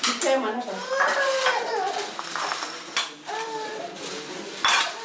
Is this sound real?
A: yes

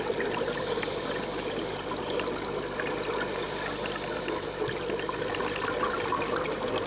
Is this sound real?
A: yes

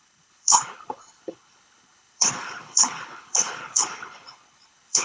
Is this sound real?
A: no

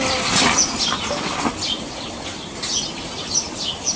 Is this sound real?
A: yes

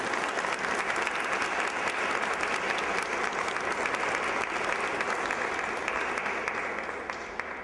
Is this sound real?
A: yes